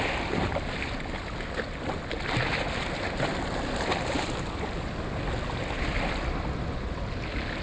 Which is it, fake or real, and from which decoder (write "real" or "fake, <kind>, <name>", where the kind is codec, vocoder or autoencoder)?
real